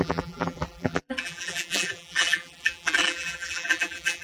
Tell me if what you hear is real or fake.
fake